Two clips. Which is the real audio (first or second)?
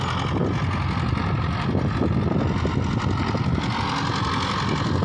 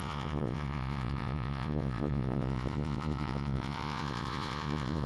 first